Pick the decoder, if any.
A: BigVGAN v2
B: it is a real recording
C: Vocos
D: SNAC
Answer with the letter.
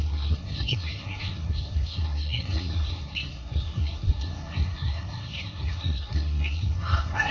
D